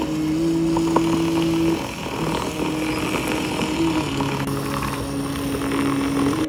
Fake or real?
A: real